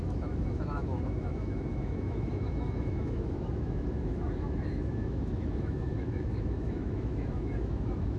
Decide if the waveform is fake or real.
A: fake